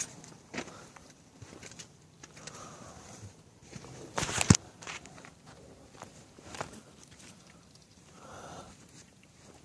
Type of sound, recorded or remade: remade